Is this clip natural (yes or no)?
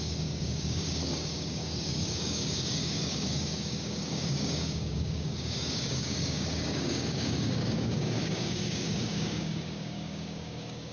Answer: no